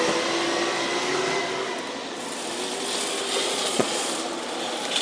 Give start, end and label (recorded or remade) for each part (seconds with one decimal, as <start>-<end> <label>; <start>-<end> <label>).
0.0-3.4 recorded; 3.4-4.1 remade; 4.1-5.0 recorded